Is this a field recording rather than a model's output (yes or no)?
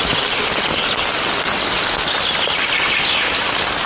yes